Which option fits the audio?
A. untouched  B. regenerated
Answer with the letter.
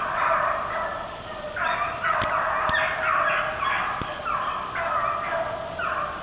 A